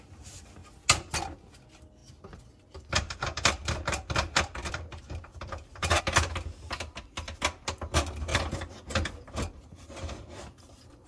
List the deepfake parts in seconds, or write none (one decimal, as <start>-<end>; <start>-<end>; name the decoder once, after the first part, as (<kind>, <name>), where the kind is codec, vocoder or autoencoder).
2.0-6.0 (vocoder, BigVGAN v2); 8.3-10.6